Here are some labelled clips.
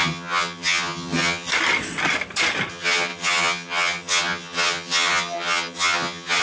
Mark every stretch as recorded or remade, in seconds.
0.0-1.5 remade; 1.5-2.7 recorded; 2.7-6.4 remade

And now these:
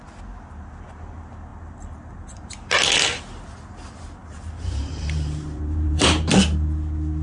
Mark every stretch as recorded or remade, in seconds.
0.0-4.2 recorded; 4.2-6.3 remade; 6.3-7.2 recorded

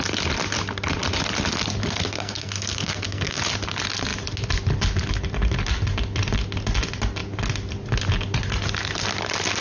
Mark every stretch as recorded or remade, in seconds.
0.0-1.8 recorded; 1.8-3.4 remade; 3.4-9.6 recorded